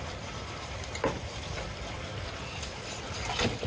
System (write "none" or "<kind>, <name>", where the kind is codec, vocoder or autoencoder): none